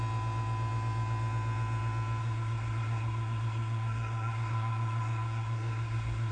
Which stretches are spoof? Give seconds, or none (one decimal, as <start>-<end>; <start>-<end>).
2.2-6.3